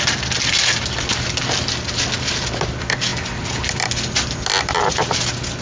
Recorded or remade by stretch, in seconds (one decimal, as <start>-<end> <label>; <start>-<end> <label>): 0.0-5.6 recorded